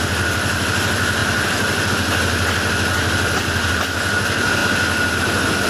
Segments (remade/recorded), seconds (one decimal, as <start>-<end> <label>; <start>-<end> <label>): 0.0-5.7 recorded